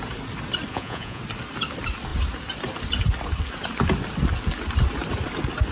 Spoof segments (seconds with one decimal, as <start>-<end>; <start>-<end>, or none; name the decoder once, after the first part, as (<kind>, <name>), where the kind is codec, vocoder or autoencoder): 0.7-1.2 (vocoder, Vocos)